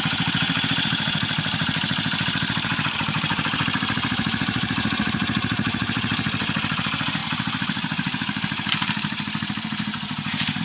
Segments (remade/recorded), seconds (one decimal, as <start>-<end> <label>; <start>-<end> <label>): 0.0-10.6 remade